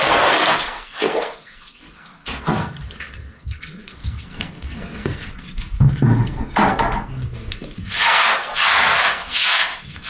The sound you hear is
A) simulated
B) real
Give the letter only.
A